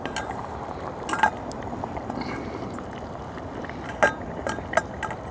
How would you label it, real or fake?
real